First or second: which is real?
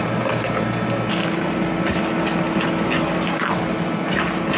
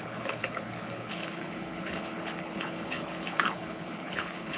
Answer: first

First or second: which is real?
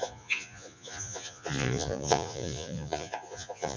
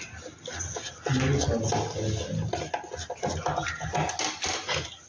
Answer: second